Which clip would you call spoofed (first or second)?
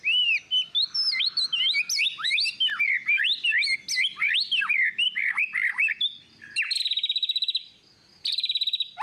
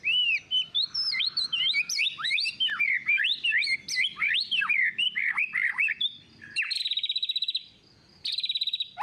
second